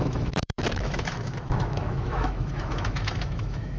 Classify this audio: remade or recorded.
remade